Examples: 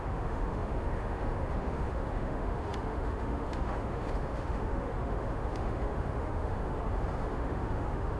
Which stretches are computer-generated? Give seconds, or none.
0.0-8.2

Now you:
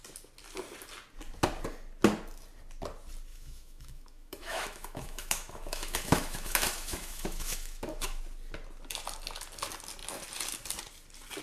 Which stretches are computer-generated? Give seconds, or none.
3.3-8.2

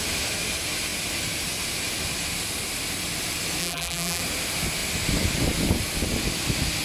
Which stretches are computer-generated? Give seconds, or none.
3.6-4.2

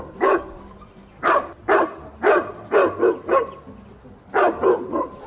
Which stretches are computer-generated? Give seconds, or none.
0.0-1.6; 4.4-5.3

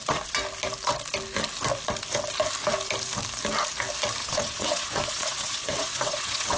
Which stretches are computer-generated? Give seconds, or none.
4.2-6.6

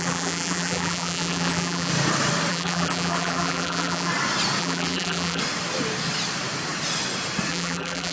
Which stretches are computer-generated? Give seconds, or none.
0.0-1.9; 2.5-4.1; 4.6-5.4; 7.5-8.1

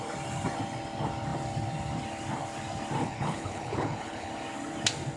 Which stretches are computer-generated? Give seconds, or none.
3.0-4.3

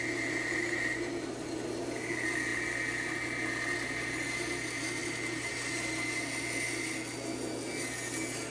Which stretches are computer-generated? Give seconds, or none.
none